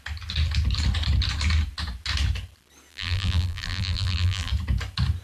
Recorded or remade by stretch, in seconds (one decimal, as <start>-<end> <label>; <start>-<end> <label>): 0.0-2.9 recorded; 2.9-4.5 remade; 4.5-5.2 recorded